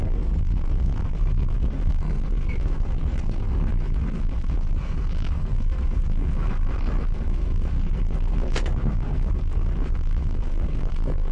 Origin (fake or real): fake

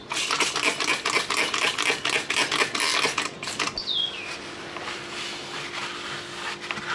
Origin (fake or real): real